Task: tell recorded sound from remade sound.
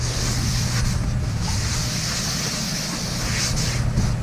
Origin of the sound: recorded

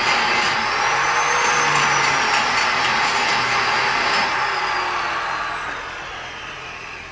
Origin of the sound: recorded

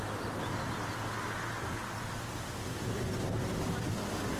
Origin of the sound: recorded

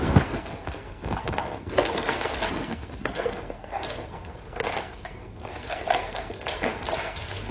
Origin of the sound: remade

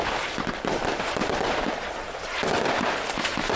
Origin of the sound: recorded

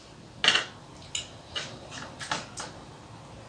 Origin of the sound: recorded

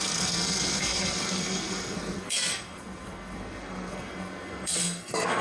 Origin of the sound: remade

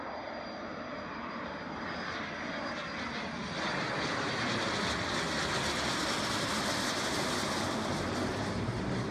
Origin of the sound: recorded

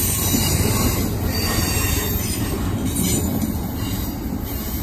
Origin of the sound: recorded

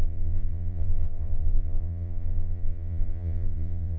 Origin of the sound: remade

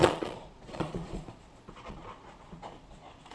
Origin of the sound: remade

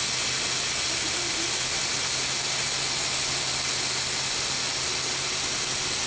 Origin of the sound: recorded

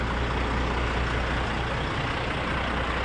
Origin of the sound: recorded